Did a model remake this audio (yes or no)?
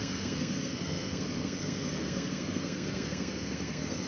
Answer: yes